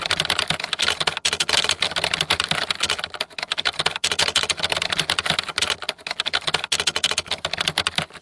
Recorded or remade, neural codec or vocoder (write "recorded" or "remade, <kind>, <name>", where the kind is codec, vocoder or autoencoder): recorded